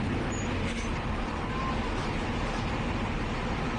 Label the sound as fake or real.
real